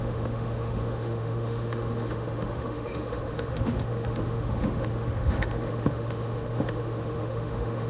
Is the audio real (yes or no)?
no